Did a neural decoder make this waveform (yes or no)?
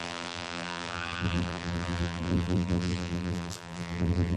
yes